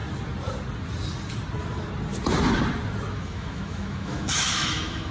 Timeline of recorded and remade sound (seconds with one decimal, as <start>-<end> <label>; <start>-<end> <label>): 0.0-3.1 recorded; 3.1-5.1 remade